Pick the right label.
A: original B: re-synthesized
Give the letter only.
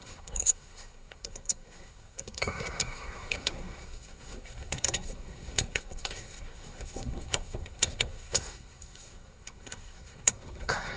B